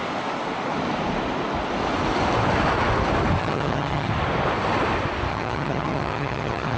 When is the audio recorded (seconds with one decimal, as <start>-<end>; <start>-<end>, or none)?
0.0-3.4; 4.1-5.3